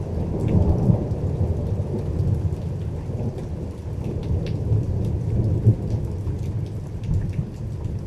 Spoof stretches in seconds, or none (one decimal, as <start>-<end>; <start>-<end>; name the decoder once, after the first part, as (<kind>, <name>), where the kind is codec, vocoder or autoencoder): none